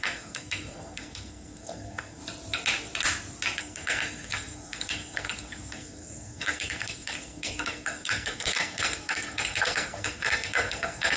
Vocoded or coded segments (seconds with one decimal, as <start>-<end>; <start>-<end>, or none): 0.0-2.2; 3.6-11.2